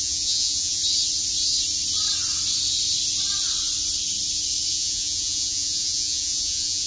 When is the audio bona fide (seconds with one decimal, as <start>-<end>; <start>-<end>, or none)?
0.8-4.7